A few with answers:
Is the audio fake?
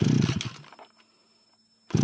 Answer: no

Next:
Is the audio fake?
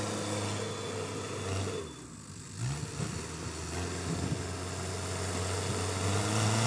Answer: no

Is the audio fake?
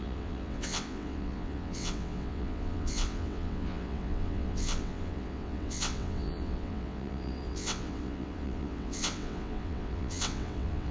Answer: yes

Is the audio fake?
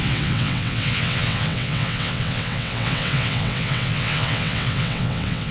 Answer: yes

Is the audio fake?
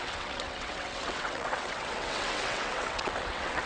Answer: yes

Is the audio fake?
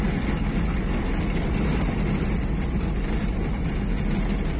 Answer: no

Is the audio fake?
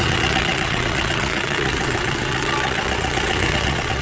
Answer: yes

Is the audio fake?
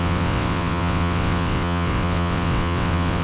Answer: yes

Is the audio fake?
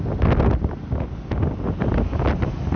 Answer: no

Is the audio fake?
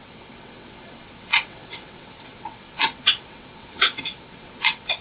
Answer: yes